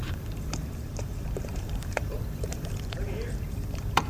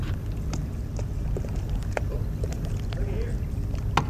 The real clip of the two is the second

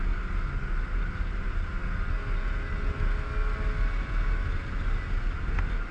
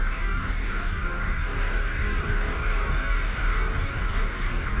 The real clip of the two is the first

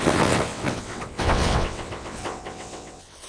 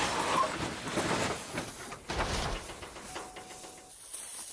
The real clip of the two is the second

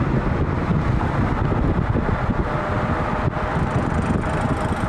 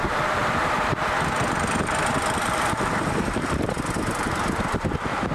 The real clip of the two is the first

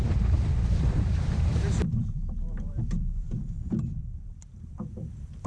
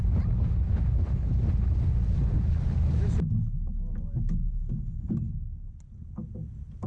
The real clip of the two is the second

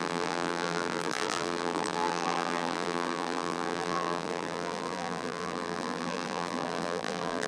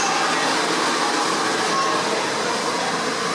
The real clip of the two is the second